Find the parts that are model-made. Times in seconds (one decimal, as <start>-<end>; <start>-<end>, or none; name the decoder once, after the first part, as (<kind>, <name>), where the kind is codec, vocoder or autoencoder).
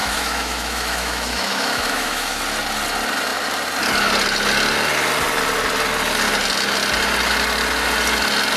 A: 0.0-2.4 (autoencoder, DAC-VAE)